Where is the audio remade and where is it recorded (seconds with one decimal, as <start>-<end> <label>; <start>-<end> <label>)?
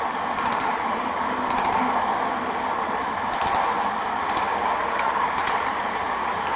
0.0-4.8 recorded; 4.8-5.8 remade; 5.8-6.6 recorded